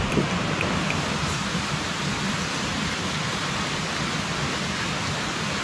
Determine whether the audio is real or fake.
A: real